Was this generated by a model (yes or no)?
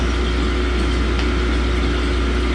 no